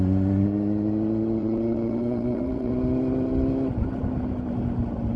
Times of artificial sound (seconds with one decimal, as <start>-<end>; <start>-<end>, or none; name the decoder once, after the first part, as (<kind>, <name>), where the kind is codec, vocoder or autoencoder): 1.4-2.7 (vocoder, WaveNeXt)

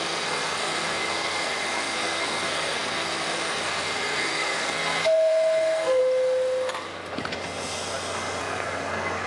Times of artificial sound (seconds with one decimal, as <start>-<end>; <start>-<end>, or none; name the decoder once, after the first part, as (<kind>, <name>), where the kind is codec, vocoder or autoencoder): 0.0-6.0 (codec, SNAC); 8.4-9.3

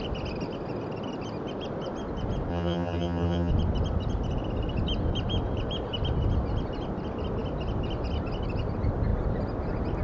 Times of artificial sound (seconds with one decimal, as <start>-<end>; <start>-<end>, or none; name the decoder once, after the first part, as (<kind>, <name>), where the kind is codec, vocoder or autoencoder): 2.5-3.5 (vocoder, HiFi-GAN)

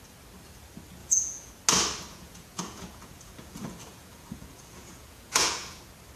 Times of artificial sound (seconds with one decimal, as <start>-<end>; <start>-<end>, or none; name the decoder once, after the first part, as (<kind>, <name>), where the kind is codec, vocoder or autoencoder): 1.0-1.5 (vocoder, Vocos); 2.1-5.8

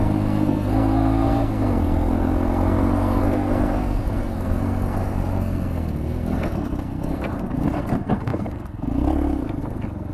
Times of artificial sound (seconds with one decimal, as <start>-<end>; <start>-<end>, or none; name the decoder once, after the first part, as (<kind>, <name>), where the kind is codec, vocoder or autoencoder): 0.0-10.1 (codec, SNAC)

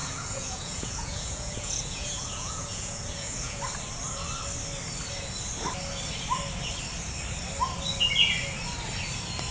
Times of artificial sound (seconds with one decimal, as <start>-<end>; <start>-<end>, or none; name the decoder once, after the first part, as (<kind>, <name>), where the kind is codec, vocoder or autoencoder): 0.0-3.6 (vocoder, Vocos)

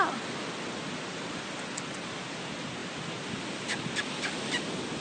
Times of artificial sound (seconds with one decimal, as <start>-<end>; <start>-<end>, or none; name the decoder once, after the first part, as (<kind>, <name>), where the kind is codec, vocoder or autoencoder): none